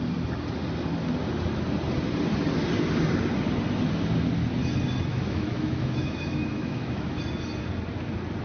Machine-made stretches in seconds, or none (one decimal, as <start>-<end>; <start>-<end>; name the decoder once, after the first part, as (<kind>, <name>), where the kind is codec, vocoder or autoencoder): 5.1-7.2 (autoencoder, DAC-VAE)